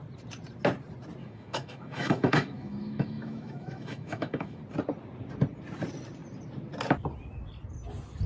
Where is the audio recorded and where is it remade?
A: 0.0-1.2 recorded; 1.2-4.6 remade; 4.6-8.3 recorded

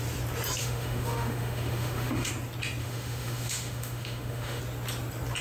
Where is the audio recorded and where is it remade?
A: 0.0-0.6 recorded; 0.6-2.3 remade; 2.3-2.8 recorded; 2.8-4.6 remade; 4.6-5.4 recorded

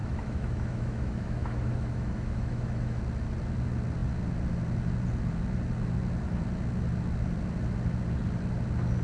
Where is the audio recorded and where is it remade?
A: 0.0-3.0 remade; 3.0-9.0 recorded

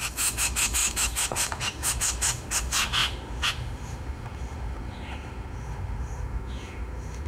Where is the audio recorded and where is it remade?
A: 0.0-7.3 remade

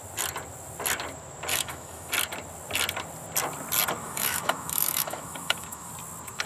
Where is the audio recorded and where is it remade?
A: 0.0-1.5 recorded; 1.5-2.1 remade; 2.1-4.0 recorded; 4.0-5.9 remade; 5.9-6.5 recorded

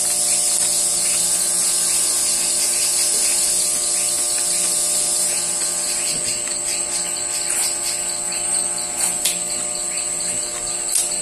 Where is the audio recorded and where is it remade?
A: 0.0-11.2 recorded